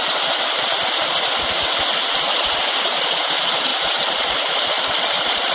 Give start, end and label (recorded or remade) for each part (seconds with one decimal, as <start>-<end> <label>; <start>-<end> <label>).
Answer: 0.0-5.5 recorded